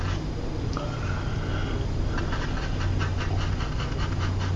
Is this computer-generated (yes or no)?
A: no